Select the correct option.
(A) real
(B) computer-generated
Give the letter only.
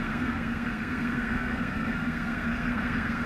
B